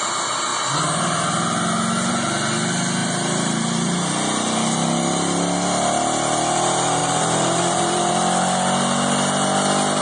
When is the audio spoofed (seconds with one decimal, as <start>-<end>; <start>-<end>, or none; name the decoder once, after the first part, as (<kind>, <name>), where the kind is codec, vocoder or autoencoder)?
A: 3.0-4.1 (vocoder, BigVGAN v2); 7.0-8.1